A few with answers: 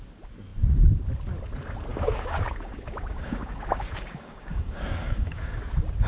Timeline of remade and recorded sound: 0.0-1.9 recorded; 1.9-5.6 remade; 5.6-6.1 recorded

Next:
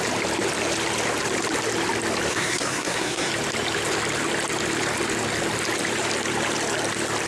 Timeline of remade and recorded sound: 0.0-2.3 recorded; 2.3-3.3 remade; 3.3-7.3 recorded

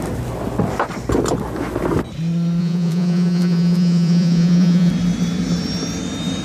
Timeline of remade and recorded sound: 0.0-2.6 recorded; 2.6-4.9 remade; 4.9-6.4 recorded

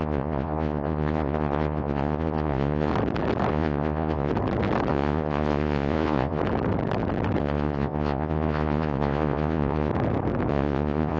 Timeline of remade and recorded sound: 0.0-2.9 remade; 2.9-3.5 recorded; 3.5-4.3 remade; 4.3-4.9 recorded; 4.9-6.4 remade; 6.4-7.4 recorded; 7.4-9.9 remade; 9.9-10.5 recorded; 10.5-11.2 remade

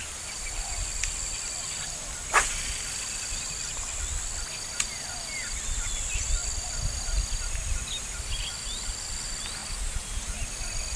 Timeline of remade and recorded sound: 0.0-11.0 recorded